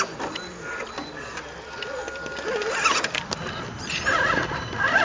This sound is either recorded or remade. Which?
recorded